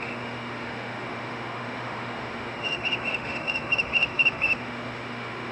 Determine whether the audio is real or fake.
fake